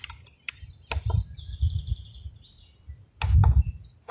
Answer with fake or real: real